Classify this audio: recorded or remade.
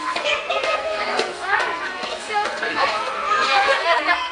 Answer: remade